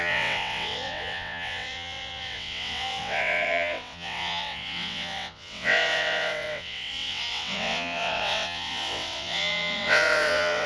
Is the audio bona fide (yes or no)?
no